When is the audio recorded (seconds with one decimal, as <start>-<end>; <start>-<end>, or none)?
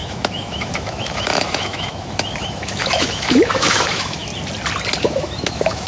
4.3-5.0